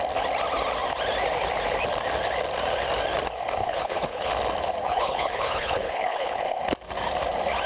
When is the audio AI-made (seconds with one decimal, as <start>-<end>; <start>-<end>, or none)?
3.6-4.3; 4.8-6.6